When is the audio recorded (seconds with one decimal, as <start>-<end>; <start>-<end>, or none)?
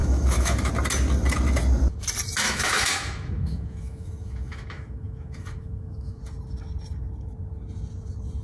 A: 0.7-2.4; 6.2-8.4